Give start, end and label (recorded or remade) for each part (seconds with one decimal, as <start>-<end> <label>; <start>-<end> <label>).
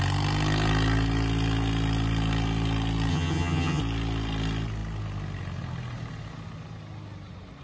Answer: 0.0-3.1 recorded; 3.1-3.8 remade; 3.8-7.6 recorded